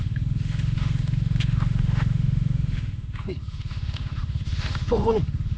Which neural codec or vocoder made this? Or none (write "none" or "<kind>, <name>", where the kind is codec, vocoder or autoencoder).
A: autoencoder, DAC-VAE